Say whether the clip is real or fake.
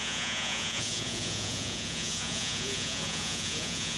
fake